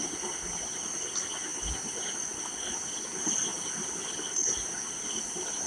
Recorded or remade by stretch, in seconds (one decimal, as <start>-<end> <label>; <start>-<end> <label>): 0.0-5.7 recorded